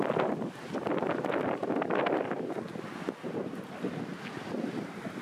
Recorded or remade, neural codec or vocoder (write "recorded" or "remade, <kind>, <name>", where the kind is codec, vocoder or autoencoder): recorded